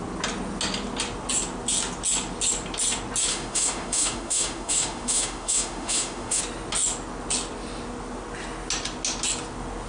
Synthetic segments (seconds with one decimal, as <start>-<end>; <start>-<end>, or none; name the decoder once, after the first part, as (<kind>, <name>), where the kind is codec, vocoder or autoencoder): 3.3-6.4 (autoencoder, DAC-VAE)

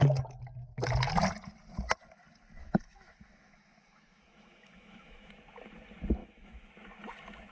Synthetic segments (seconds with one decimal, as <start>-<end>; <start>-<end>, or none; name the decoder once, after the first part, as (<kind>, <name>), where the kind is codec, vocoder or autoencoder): 2.6-5.3 (autoencoder, DAC-VAE); 6.2-6.7

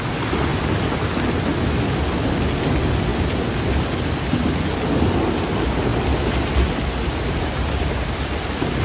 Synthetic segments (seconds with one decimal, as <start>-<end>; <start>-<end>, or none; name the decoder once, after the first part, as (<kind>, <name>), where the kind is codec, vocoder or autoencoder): none

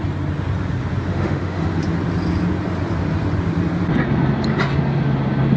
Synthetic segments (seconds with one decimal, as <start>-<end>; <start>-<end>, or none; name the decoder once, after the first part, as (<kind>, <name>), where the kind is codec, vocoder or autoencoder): 1.1-1.8 (autoencoder, DAC-VAE)

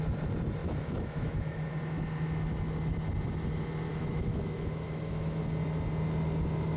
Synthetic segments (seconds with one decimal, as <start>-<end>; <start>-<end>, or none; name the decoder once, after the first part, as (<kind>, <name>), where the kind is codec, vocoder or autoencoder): 0.6-1.7 (autoencoder, DAC-VAE); 3.9-5.4

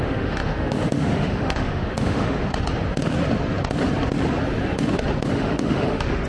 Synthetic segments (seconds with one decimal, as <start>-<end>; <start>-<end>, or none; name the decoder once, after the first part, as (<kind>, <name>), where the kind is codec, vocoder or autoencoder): 0.0-2.5 (autoencoder, DAC-VAE); 5.3-6.3